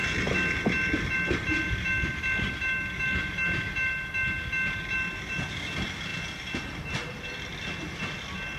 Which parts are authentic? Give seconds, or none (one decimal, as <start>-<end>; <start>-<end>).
0.0-8.6